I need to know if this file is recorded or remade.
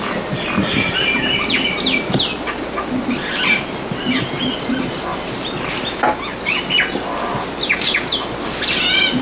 recorded